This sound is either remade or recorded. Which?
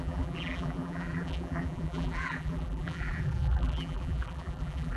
remade